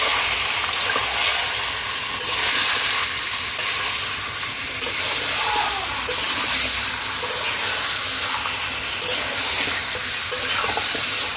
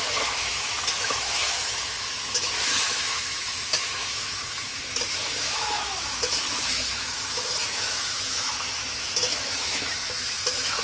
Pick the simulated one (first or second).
second